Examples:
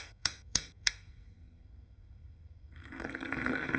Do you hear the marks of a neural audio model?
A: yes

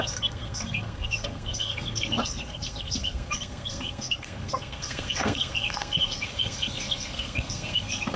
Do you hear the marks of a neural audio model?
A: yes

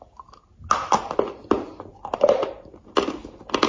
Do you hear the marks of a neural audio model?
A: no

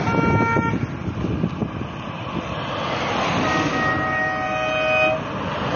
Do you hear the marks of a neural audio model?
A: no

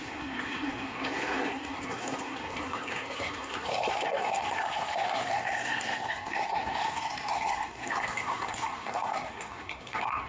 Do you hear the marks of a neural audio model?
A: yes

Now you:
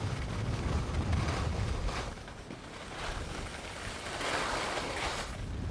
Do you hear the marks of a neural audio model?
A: no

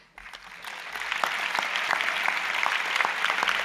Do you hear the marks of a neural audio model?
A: no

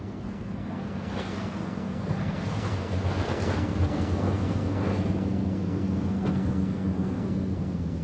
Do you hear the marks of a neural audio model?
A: yes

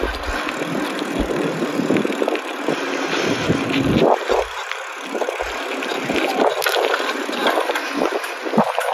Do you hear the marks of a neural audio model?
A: no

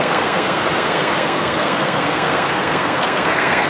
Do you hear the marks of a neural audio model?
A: yes